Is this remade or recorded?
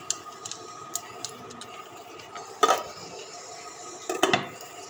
recorded